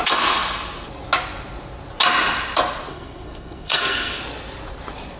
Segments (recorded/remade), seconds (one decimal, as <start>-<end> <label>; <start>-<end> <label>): 0.0-2.9 recorded; 2.9-4.2 remade; 4.2-5.2 recorded